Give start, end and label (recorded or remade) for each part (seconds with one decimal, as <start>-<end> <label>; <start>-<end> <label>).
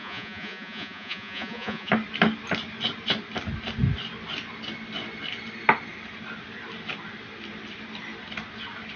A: 0.0-1.9 remade; 1.9-9.0 recorded